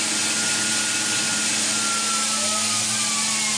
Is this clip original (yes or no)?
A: yes